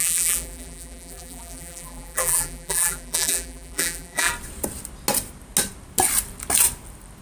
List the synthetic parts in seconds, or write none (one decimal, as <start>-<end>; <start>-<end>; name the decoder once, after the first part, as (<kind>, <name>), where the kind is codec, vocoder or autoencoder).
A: 0.0-4.3 (vocoder, BigVGAN v2)